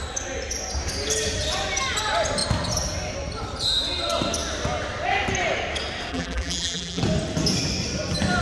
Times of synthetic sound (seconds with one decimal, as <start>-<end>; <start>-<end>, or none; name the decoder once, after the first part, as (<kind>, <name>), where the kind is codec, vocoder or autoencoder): 6.1-7.0 (vocoder, BigVGAN v2)